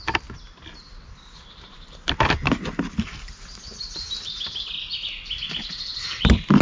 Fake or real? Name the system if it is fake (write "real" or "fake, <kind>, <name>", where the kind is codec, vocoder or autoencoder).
real